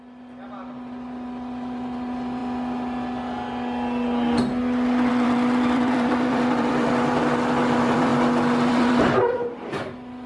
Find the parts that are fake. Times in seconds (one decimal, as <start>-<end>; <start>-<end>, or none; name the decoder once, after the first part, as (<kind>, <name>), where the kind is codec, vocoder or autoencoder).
0.0-2.4 (vocoder, BigVGAN v2); 5.1-8.1; 8.7-10.3